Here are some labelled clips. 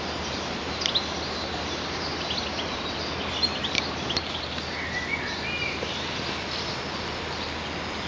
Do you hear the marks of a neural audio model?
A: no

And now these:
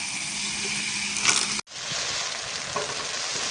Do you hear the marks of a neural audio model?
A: no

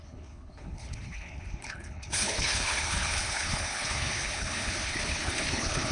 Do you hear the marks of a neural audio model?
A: yes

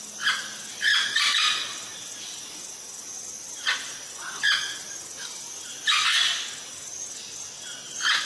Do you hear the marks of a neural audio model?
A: no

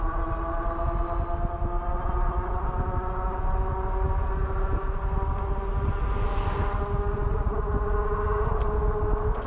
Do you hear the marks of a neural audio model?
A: no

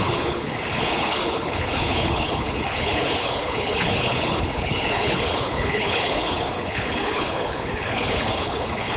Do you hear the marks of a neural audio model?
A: yes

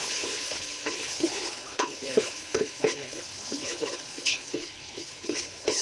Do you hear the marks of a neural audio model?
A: yes